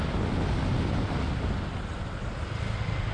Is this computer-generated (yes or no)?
no